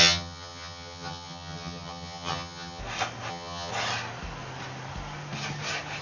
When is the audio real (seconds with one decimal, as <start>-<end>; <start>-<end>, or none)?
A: 2.8-3.3; 3.7-6.0